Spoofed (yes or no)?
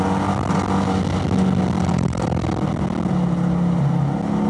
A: no